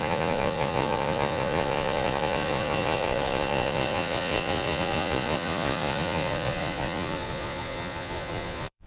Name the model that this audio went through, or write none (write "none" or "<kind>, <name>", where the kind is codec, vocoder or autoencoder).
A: vocoder, Vocos